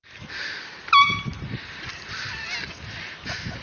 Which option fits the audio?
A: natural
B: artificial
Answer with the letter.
A